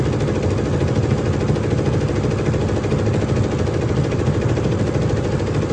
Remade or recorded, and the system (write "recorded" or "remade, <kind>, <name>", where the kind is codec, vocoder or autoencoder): recorded